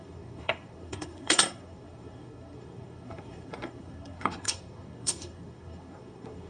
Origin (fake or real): fake